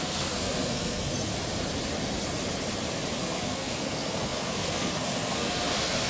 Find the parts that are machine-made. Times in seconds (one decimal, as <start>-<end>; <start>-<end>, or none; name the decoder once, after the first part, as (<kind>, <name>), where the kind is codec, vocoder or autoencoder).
0.0-1.3 (codec, SNAC); 3.2-6.1